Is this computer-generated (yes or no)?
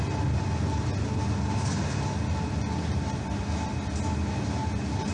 no